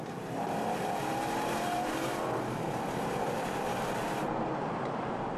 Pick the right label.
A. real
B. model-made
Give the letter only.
B